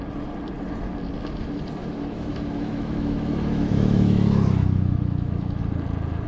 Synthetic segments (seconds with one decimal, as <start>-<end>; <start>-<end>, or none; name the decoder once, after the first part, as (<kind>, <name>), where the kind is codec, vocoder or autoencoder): 1.8-5.6 (autoencoder, DAC-VAE)